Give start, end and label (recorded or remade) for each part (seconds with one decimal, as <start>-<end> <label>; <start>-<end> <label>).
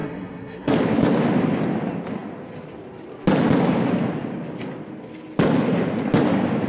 0.0-0.7 remade; 0.7-6.7 recorded